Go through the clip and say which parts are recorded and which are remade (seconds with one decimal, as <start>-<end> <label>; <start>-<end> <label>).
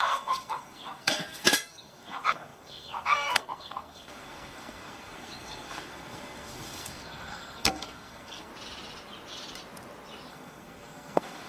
0.0-8.5 remade; 8.5-10.3 recorded; 10.3-11.5 remade